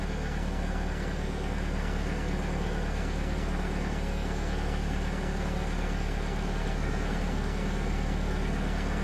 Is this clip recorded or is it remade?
remade